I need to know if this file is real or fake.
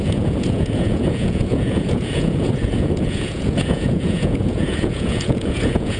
fake